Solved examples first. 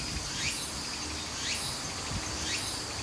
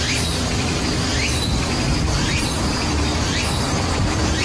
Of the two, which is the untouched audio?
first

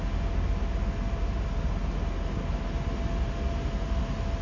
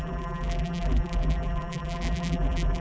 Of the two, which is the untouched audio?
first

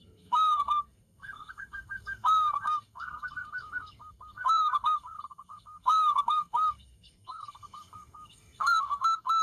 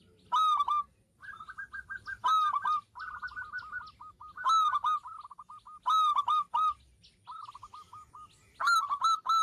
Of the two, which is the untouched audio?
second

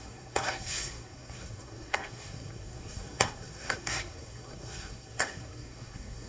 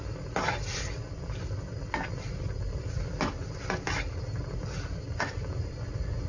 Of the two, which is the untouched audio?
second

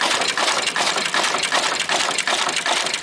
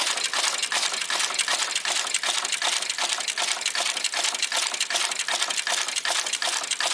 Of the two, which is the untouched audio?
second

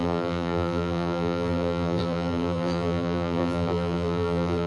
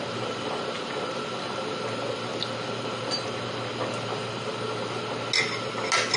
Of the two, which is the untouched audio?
second